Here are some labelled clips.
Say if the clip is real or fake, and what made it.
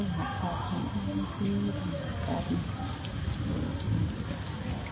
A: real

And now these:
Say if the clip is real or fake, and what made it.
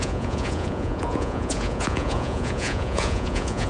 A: fake, vocoder, Vocos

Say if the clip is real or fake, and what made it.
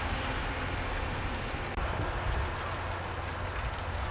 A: real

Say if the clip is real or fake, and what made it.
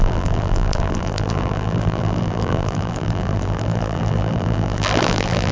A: fake, vocoder, BigVGAN v2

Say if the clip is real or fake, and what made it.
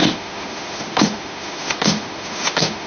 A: fake, autoencoder, DAC-VAE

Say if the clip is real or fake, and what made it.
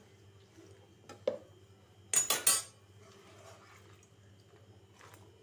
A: real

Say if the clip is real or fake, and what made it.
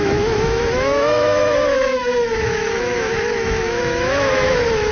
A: fake, autoencoder, DAC-VAE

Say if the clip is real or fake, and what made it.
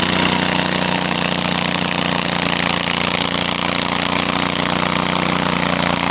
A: real